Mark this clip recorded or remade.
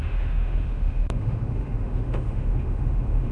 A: remade